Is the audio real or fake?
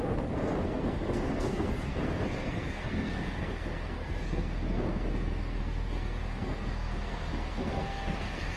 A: fake